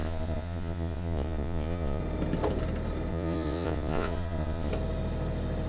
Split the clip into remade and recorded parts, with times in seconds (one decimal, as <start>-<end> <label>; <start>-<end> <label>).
0.0-2.0 remade; 2.0-3.1 recorded; 3.1-4.7 remade; 4.7-5.7 recorded